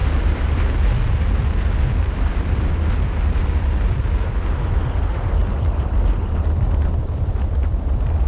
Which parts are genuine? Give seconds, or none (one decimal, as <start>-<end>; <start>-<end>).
0.0-5.4; 5.9-8.3